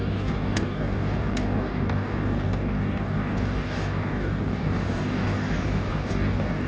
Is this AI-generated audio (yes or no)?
yes